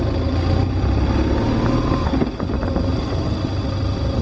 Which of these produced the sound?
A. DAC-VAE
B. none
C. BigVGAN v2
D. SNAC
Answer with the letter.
B